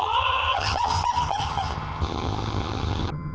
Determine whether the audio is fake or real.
fake